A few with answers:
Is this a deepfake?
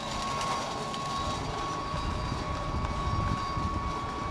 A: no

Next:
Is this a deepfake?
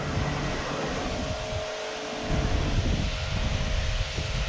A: no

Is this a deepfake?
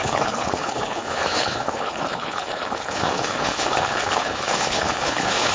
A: yes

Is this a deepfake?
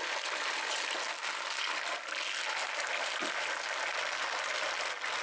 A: no